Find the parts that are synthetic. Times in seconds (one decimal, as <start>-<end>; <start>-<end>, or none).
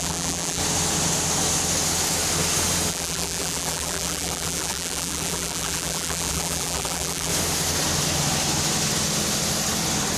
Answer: 0.0-0.6; 2.9-7.3